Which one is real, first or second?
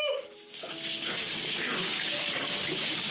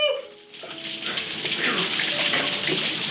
second